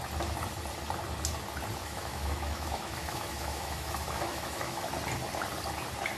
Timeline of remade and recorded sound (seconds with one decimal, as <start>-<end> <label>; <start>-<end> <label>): 0.0-1.8 recorded; 1.8-4.9 remade; 4.9-6.2 recorded